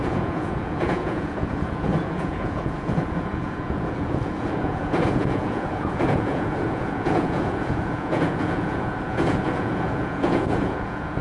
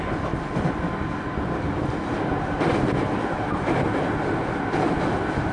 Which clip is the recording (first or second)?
second